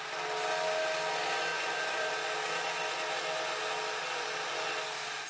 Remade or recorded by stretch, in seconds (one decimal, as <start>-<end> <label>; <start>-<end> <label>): 0.0-1.5 recorded; 1.5-2.1 remade; 2.1-5.3 recorded